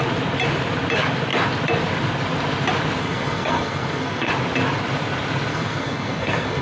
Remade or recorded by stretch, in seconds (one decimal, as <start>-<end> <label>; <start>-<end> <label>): 0.0-3.0 recorded; 3.0-4.3 remade; 4.3-5.5 recorded; 5.5-6.6 remade